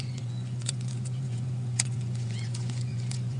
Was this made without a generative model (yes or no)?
no